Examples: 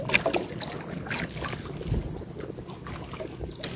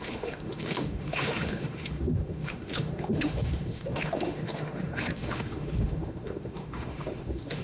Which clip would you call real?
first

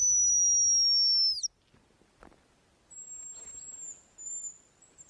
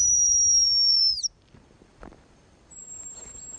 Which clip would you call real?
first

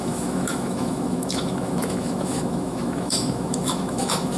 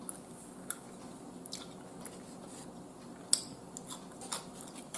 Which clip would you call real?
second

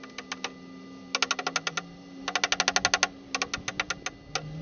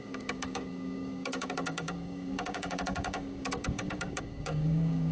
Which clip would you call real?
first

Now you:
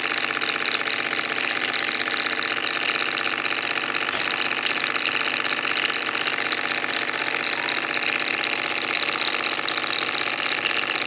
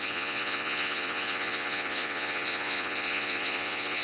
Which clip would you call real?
first